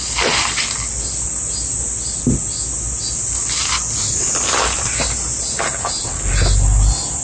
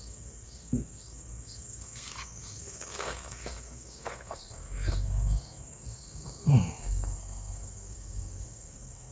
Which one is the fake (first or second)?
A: second